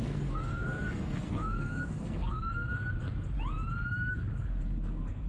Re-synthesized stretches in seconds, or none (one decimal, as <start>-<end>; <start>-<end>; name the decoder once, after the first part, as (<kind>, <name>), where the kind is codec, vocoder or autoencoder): 0.0-2.8 (codec, SNAC); 4.1-5.3